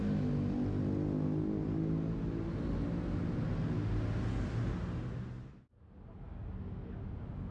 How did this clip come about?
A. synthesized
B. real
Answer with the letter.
B